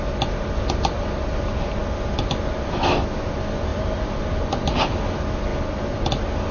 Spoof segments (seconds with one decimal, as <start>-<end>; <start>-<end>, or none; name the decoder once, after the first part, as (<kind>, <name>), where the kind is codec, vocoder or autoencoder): none